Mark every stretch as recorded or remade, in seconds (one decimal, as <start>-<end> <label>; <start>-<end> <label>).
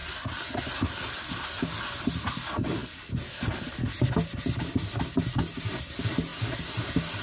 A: 0.0-7.2 recorded